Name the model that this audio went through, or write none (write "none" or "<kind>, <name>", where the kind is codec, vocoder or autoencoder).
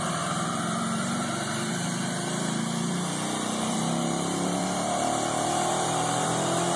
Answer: vocoder, BigVGAN v2